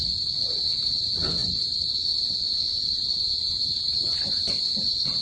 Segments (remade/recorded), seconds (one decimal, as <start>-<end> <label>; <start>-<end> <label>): 0.0-1.4 recorded; 1.4-2.3 remade; 2.3-2.7 recorded; 2.7-4.6 remade; 4.6-5.2 recorded